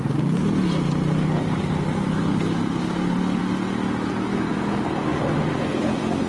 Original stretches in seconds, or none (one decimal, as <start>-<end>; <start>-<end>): 0.0-6.3